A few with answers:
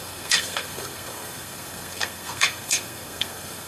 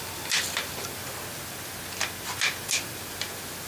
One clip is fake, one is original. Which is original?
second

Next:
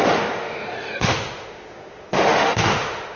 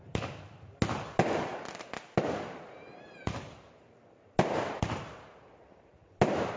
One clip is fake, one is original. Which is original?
second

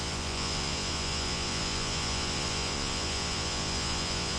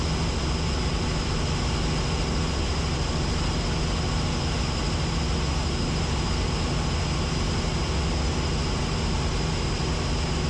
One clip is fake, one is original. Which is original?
second